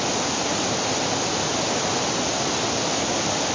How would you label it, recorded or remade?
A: recorded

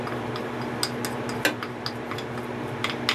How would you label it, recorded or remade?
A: recorded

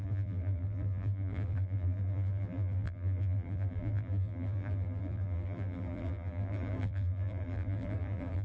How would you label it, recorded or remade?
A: remade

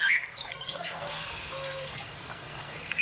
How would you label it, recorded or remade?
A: remade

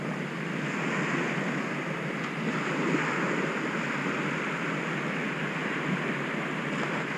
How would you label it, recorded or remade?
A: recorded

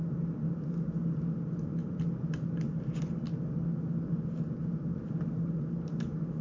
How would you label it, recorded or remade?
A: recorded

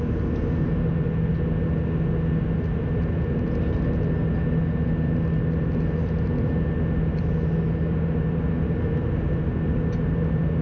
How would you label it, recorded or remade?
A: recorded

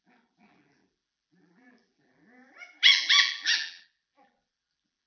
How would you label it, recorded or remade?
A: remade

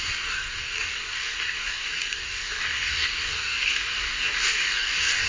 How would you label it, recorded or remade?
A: remade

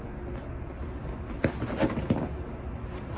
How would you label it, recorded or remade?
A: recorded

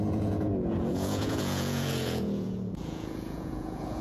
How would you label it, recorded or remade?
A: remade